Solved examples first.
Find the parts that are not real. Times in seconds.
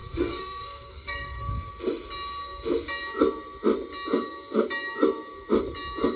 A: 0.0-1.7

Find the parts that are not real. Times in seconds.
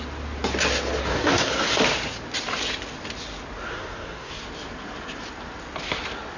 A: 1.1-1.8; 3.7-4.4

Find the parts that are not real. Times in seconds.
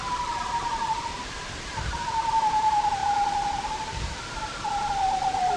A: none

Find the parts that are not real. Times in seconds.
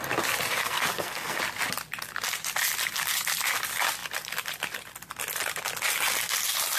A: 0.6-1.4